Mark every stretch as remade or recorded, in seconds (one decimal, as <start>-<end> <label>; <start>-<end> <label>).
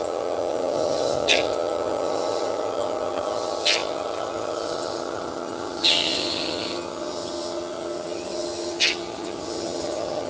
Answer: 0.0-10.3 remade